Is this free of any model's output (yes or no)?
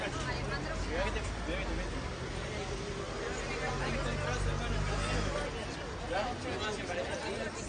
yes